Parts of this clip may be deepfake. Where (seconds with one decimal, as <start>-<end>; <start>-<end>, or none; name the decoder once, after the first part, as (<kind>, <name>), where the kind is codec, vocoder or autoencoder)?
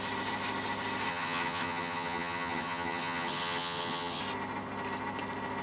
1.1-4.2 (vocoder, HiFi-GAN)